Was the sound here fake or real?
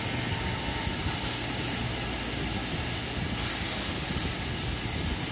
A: real